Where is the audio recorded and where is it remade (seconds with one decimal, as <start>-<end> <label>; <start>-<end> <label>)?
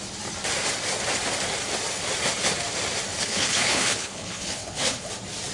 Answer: 0.0-3.2 recorded; 3.2-5.1 remade; 5.1-5.5 recorded